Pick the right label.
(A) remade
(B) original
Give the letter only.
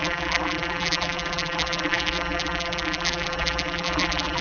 A